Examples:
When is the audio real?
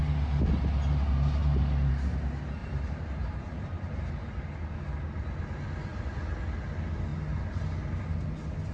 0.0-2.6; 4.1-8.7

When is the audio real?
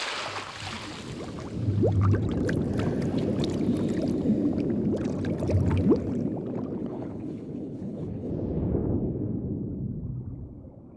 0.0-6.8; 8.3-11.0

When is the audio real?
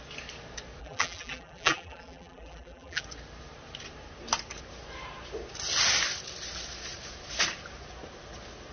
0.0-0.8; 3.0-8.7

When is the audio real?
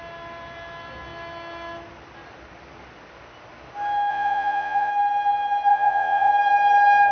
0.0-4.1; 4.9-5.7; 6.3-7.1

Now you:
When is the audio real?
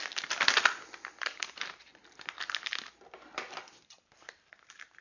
0.0-1.2; 2.0-3.6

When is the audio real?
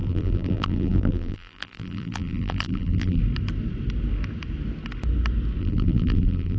3.2-5.6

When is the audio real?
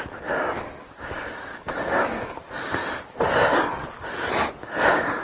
0.0-1.5; 2.4-5.2